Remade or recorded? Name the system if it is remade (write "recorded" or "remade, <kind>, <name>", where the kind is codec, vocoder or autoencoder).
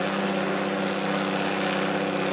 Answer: recorded